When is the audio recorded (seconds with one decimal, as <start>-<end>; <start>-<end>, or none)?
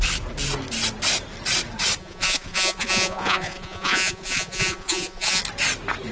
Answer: 0.0-2.0; 5.4-6.1